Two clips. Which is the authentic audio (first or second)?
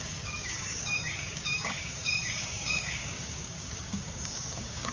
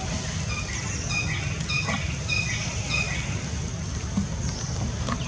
second